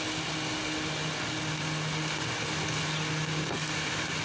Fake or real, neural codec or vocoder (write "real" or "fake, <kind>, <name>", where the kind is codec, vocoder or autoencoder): real